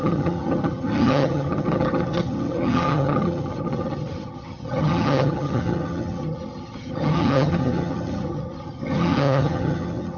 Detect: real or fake fake